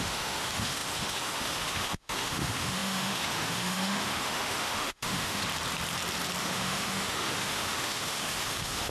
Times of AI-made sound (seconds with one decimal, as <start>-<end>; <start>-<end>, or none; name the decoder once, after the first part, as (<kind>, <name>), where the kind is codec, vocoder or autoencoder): 0.0-5.4 (autoencoder, DAC-VAE); 6.4-8.9